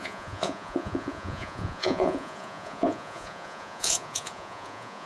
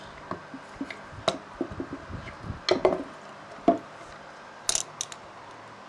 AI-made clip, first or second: first